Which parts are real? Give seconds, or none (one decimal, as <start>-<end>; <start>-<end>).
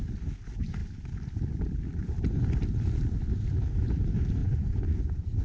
0.0-4.4; 5.0-5.4